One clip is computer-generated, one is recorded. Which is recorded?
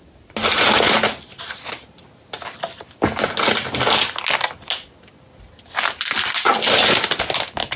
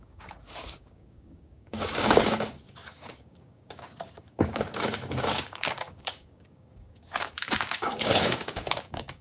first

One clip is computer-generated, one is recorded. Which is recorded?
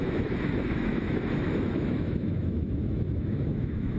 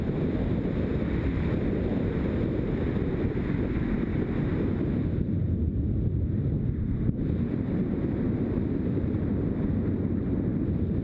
second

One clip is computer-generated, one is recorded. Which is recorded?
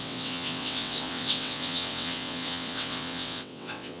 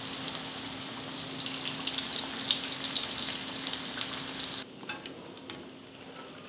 second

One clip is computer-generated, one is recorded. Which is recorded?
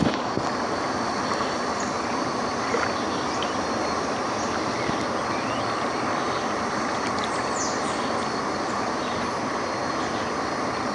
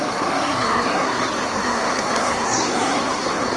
first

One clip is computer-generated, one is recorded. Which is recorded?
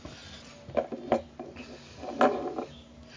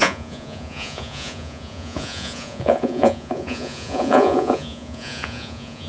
first